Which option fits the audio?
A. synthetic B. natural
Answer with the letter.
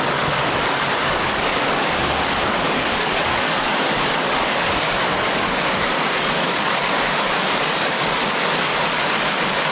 A